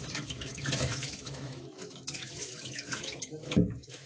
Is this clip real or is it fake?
fake